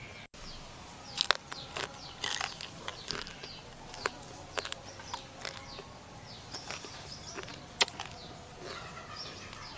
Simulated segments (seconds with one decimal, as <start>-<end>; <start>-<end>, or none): none